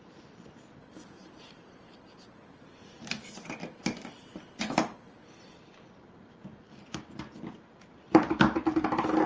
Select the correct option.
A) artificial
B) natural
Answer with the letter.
B